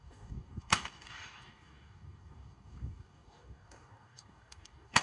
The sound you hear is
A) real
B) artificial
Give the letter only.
B